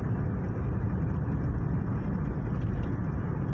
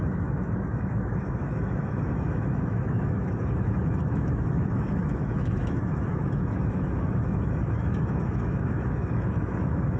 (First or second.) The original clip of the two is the first